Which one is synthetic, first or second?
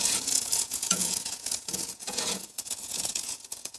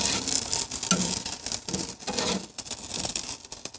first